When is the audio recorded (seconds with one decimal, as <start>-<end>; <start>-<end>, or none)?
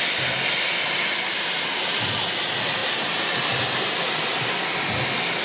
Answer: 0.0-2.8; 3.3-5.4